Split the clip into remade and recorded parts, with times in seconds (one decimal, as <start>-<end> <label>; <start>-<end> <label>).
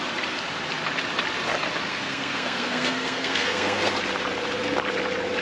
0.0-1.9 recorded; 1.9-3.9 remade; 3.9-5.4 recorded